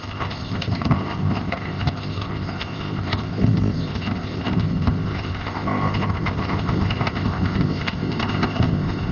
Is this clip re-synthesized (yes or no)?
yes